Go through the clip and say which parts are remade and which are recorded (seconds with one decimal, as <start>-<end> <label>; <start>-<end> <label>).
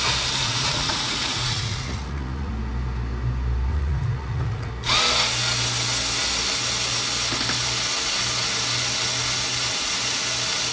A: 0.0-0.4 recorded; 0.4-2.5 remade; 2.5-3.7 recorded; 3.7-4.7 remade; 4.7-10.7 recorded